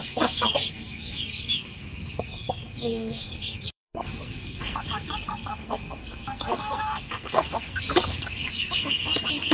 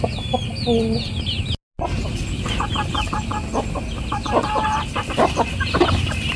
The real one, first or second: second